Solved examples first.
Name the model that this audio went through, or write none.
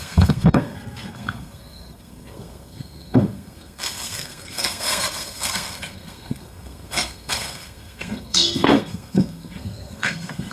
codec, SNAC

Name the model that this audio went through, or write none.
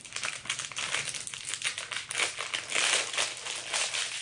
none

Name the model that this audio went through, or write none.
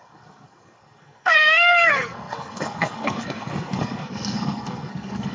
codec, SNAC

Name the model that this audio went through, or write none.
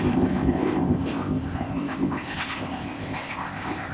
codec, ZipCodec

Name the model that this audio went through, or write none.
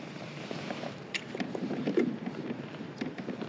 vocoder, BigVGAN v2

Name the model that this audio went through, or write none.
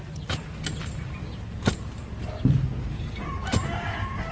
none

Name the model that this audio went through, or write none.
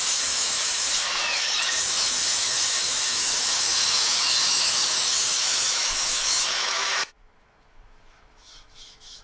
autoencoder, DAC-VAE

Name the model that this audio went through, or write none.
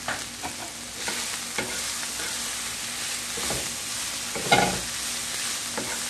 none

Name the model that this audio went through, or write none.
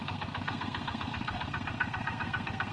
codec, SNAC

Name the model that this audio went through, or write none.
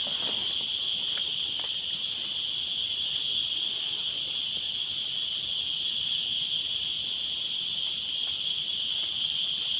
none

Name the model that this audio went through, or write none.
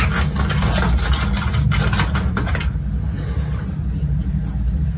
none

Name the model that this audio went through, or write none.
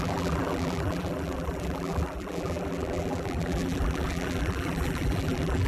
vocoder, BigVGAN v2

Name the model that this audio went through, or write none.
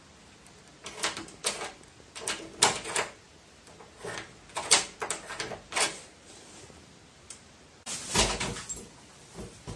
none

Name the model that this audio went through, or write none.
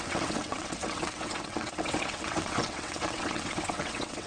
vocoder, WaveNeXt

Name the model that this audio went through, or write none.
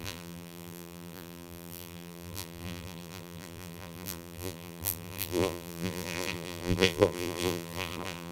vocoder, BigVGAN v2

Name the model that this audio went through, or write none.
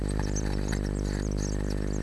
none